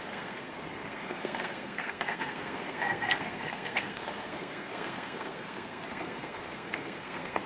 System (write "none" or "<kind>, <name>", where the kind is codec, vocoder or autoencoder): codec, SNAC